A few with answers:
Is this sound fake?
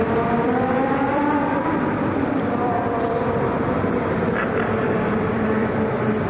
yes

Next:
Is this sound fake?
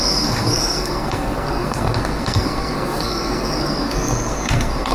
yes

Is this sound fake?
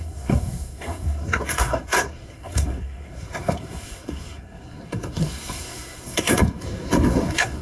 yes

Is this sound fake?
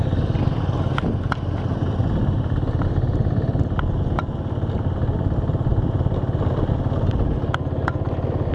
no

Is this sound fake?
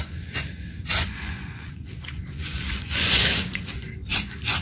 yes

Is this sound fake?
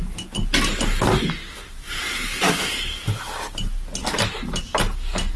no